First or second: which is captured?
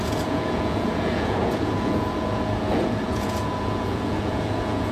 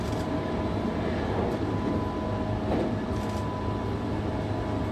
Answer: second